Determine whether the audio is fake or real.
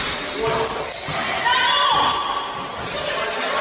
real